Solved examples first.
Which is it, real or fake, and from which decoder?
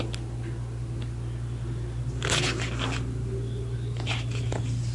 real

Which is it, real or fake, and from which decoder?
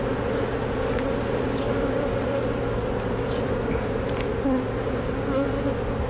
real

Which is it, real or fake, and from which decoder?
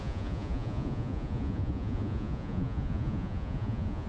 fake, vocoder, Vocos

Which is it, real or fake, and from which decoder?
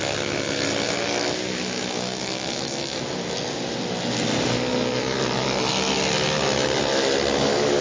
real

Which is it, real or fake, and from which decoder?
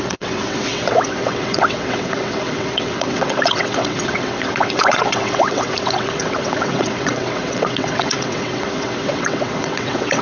fake, vocoder, WaveNeXt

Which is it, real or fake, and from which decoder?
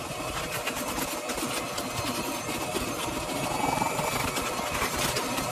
real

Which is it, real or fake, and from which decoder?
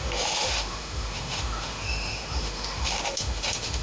fake, autoencoder, DAC-VAE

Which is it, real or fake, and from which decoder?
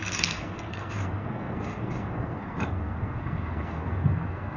fake, codec, SNAC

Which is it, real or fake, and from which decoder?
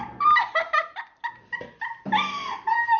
real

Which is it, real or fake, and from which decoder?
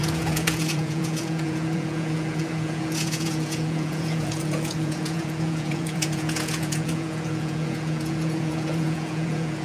fake, vocoder, Vocos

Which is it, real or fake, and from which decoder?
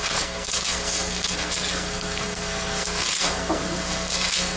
fake, codec, SNAC